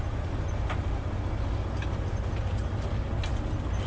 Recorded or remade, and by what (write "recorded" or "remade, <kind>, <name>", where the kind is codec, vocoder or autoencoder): recorded